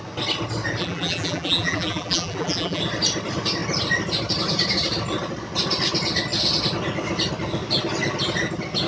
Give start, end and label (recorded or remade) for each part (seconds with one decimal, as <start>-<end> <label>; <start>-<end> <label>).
0.0-0.8 recorded; 0.8-2.8 remade; 2.8-8.9 recorded